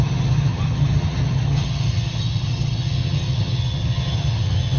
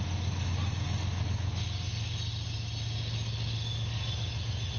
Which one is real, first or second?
second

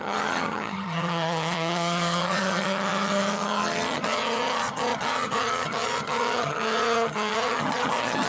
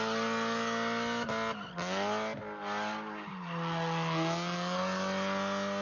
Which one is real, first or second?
second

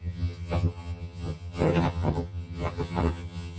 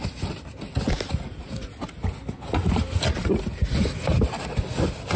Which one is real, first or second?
second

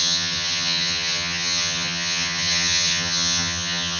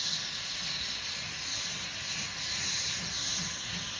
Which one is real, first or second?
second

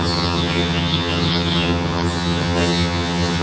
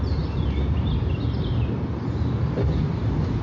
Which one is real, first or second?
second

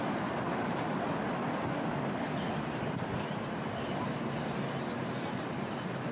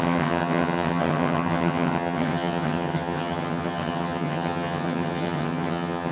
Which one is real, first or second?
first